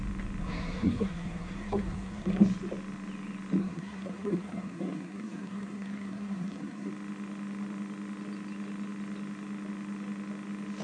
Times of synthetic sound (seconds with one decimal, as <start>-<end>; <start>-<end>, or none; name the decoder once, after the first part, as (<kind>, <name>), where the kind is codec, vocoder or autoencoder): 0.4-2.4 (codec, SNAC); 3.6-6.9